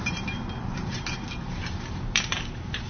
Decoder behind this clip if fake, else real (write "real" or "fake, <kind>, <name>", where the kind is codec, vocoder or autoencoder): fake, vocoder, BigVGAN v2